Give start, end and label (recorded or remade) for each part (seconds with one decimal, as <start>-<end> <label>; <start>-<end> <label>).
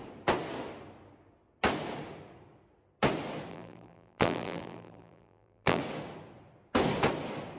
0.0-3.5 recorded; 3.5-5.8 remade; 5.8-7.6 recorded